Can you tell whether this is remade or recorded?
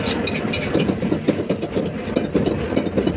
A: recorded